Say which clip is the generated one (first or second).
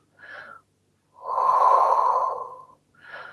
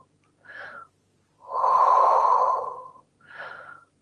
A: second